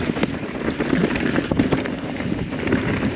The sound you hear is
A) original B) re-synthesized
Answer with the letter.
A